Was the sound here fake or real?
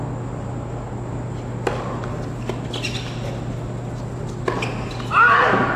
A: real